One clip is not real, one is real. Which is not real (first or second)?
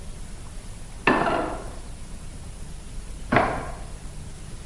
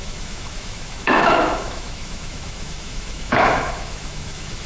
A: second